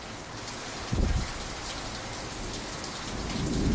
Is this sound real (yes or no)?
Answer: yes